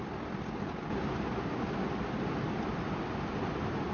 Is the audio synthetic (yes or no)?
no